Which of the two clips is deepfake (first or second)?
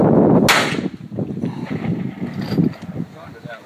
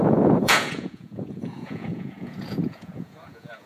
second